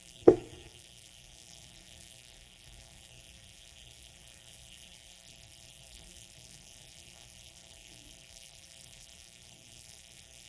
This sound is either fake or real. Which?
fake